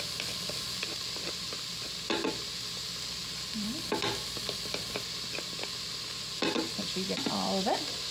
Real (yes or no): yes